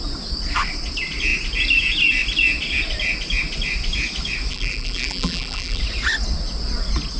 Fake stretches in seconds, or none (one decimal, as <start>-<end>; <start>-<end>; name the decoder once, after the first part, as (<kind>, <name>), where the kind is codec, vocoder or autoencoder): 4.5-5.8 (vocoder, BigVGAN v2)